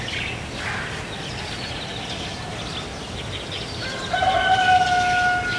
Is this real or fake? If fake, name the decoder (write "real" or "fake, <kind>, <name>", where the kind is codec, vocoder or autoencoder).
real